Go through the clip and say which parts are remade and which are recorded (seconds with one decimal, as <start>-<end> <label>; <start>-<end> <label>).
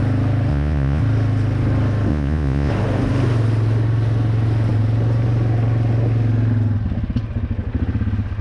0.0-0.5 recorded; 0.5-1.0 remade; 1.0-2.1 recorded; 2.1-2.7 remade; 2.7-8.4 recorded